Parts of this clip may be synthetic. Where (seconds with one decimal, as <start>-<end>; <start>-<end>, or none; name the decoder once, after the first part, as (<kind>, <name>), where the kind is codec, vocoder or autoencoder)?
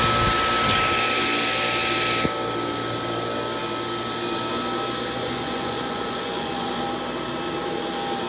5.2-6.8 (vocoder, Vocos)